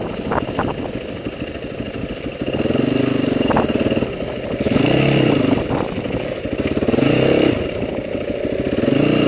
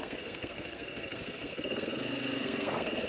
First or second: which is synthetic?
second